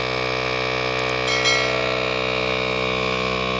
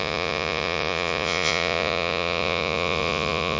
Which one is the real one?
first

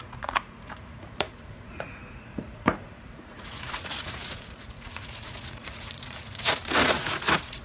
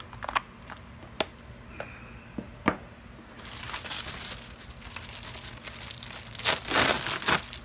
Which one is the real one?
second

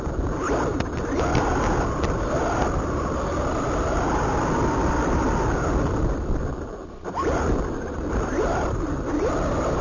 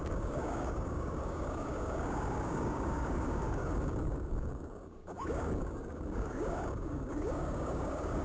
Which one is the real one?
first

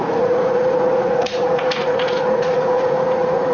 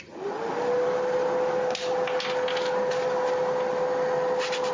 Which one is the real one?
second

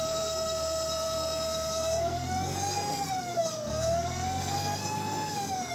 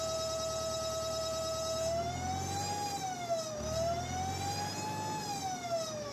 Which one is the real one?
second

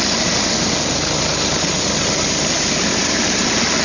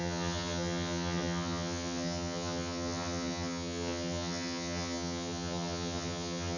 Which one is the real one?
first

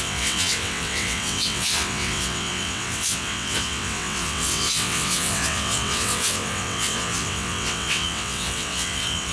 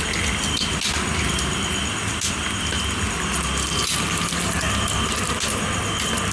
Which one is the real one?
second